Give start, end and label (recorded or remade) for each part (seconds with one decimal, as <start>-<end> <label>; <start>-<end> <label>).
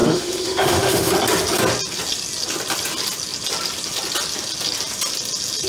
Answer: 0.0-1.1 remade; 1.1-5.7 recorded